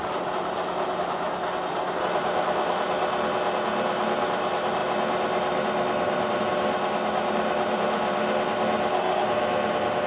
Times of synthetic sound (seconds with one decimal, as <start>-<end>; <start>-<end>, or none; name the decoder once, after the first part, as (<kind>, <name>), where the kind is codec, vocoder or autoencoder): none